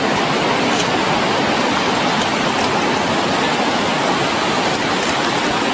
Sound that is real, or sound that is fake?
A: real